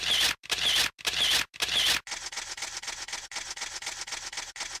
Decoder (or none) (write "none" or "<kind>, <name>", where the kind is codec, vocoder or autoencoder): none